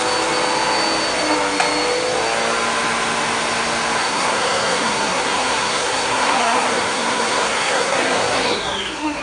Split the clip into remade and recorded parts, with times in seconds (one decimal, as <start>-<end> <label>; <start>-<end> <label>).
0.0-4.0 recorded; 4.0-9.2 remade